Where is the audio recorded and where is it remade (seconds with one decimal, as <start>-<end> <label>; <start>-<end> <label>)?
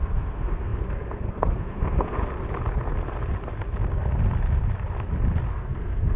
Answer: 0.0-2.2 remade; 2.2-5.5 recorded; 5.5-6.2 remade